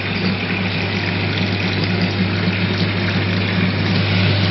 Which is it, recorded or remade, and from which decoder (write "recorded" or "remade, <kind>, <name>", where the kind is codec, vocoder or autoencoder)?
recorded